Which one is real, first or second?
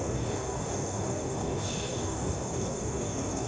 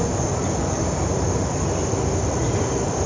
second